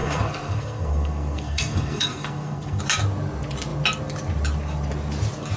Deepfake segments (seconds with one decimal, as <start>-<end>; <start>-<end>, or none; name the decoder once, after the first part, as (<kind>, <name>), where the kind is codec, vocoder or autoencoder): 0.0-2.8 (codec, SNAC)

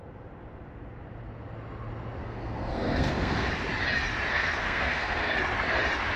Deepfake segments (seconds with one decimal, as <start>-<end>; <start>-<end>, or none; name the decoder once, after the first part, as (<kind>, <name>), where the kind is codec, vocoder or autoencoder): 2.2-3.5 (codec, SNAC); 4.3-5.3